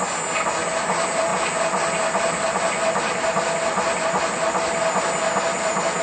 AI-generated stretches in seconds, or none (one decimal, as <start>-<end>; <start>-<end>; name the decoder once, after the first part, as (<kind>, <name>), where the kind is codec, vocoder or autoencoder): none